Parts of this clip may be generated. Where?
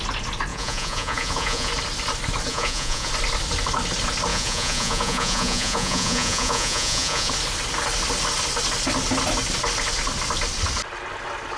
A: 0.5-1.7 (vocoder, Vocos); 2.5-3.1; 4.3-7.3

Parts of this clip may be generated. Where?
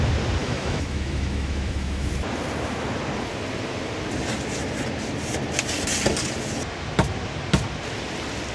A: 0.4-2.1 (autoencoder, DAC-VAE)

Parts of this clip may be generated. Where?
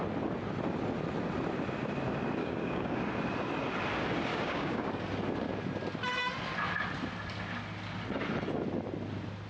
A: 2.4-3.0 (codec, DAC); 4.3-4.9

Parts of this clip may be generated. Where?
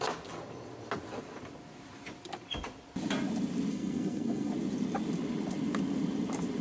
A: 3.7-4.5 (codec, SNAC)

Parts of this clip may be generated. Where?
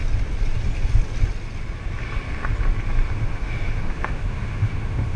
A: 3.1-5.2 (autoencoder, DAC-VAE)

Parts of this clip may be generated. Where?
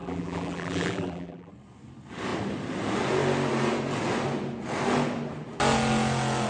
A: 0.0-1.5 (vocoder, BigVGAN v2)